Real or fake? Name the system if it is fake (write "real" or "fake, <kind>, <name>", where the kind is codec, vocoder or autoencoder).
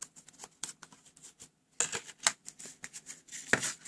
real